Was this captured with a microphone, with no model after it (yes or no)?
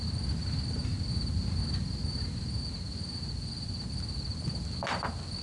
yes